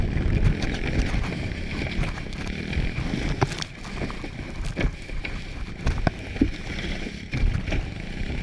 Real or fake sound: real